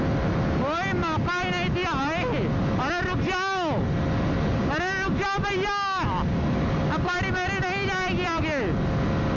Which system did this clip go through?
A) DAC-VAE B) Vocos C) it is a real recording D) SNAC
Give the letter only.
C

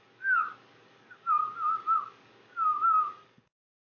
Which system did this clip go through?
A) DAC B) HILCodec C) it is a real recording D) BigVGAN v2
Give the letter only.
A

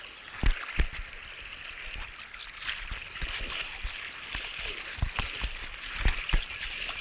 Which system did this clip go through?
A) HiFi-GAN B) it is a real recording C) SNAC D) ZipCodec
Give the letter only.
B